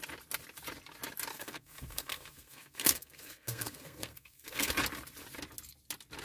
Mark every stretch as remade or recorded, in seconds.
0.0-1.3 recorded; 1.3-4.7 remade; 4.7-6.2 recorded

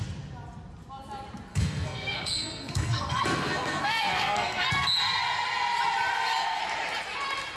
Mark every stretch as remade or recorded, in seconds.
0.0-1.5 recorded; 1.5-4.7 remade; 4.7-6.1 recorded; 6.1-6.6 remade; 6.6-7.6 recorded

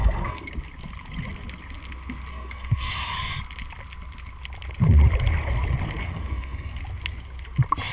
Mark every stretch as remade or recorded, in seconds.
0.0-0.5 remade; 0.5-2.3 recorded; 2.3-2.9 remade; 2.9-6.0 recorded; 6.0-6.8 remade; 6.8-7.9 recorded

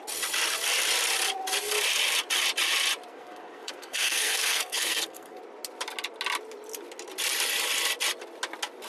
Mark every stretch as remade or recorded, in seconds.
0.0-3.1 recorded; 3.1-5.4 remade; 5.4-8.9 recorded

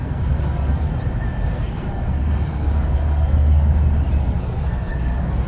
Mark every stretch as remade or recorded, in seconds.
0.0-0.9 remade; 0.9-1.5 recorded; 1.5-3.7 remade; 3.7-4.2 recorded; 4.2-5.5 remade

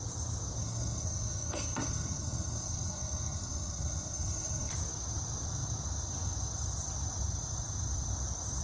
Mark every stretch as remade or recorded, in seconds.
0.0-0.6 recorded; 0.6-4.7 remade; 4.7-8.6 recorded